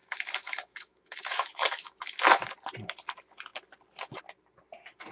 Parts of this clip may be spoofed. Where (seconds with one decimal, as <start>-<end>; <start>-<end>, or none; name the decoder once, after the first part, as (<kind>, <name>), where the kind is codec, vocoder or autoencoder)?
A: 0.0-2.2 (autoencoder, DAC-VAE)